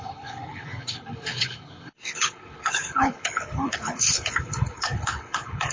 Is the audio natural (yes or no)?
no